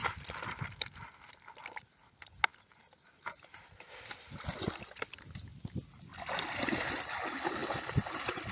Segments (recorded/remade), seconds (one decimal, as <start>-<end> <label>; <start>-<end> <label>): 0.0-0.7 remade; 0.7-2.5 recorded; 2.5-3.3 remade; 3.3-6.1 recorded; 6.1-6.7 remade; 6.7-7.6 recorded; 7.6-8.5 remade